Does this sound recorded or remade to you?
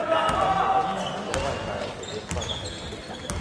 recorded